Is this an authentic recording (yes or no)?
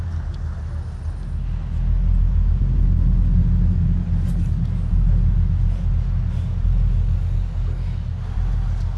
yes